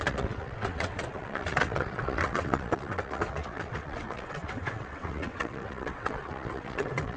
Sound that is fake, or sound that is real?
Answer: fake